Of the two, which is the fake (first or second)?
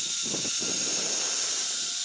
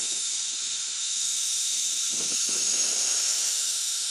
second